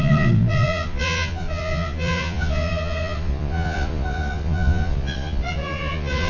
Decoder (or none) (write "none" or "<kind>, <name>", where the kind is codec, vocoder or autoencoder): vocoder, Vocos